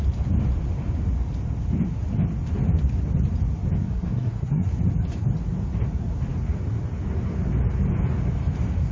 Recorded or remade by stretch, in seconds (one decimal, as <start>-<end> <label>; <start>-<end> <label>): 0.0-3.8 recorded; 3.8-4.7 remade; 4.7-8.9 recorded